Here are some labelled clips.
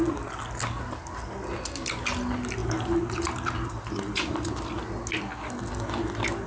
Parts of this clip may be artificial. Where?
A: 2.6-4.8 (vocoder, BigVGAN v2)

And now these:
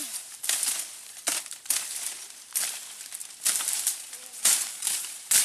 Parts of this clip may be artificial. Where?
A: 0.0-0.4 (vocoder, BigVGAN v2); 3.6-5.4

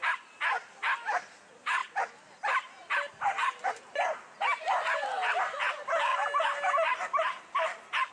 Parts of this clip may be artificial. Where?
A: none

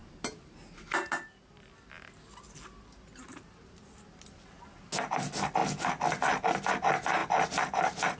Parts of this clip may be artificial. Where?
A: 0.0-0.8 (vocoder, BigVGAN v2)